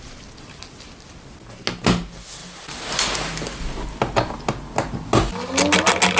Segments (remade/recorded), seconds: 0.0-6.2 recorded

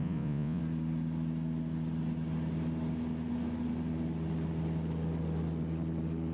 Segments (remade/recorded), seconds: 0.0-0.6 remade; 0.6-6.3 recorded